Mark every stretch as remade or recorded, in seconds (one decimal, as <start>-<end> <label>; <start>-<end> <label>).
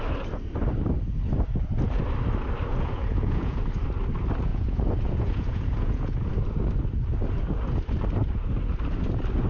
0.0-2.7 recorded; 2.7-3.6 remade; 3.6-4.5 recorded; 4.5-6.3 remade; 6.3-9.5 recorded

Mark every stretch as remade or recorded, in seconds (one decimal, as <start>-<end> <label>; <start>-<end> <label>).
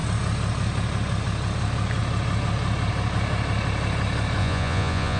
0.0-4.4 recorded; 4.4-5.2 remade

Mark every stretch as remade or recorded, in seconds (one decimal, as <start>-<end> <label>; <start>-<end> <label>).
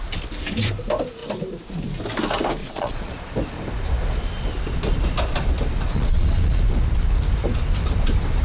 0.0-2.6 recorded; 2.6-3.1 remade; 3.1-5.9 recorded; 5.9-6.6 remade; 6.6-8.4 recorded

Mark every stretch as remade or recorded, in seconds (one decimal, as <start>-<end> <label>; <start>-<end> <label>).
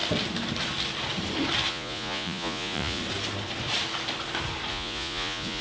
0.0-1.7 recorded; 1.7-3.0 remade; 3.0-4.7 recorded; 4.7-5.6 remade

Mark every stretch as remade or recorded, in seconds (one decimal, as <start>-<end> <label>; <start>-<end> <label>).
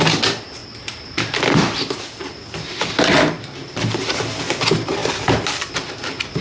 0.0-6.4 recorded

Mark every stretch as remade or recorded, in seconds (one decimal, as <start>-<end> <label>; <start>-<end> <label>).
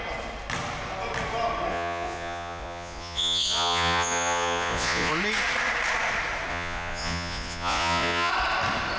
0.0-1.7 recorded; 1.7-5.1 remade; 5.1-6.5 recorded; 6.5-8.3 remade; 8.3-9.0 recorded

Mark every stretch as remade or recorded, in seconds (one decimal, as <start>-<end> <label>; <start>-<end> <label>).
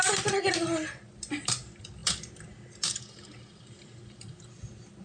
0.0-5.0 recorded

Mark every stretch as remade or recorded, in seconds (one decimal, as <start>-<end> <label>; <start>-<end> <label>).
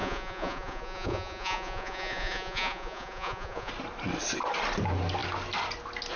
0.0-3.7 remade; 3.7-6.2 recorded